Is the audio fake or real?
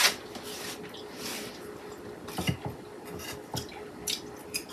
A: real